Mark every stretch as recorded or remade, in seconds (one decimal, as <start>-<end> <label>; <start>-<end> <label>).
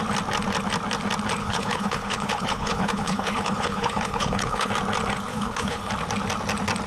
0.0-1.4 recorded; 1.4-4.7 remade; 4.7-5.3 recorded; 5.3-5.9 remade; 5.9-6.9 recorded